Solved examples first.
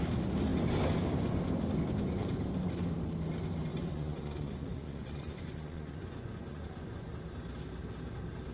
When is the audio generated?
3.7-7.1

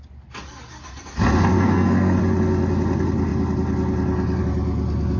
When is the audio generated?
1.5-2.2

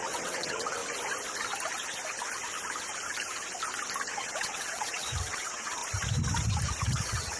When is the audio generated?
0.0-0.8; 4.1-5.8; 6.8-7.4

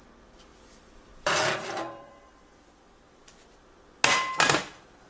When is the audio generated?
0.5-2.7

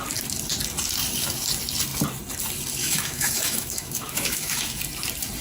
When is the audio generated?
2.8-4.8

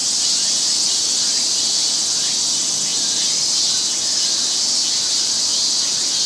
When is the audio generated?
0.6-2.9; 4.4-5.5

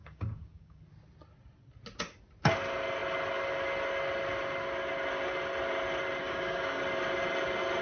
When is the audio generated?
0.0-0.8; 6.2-6.8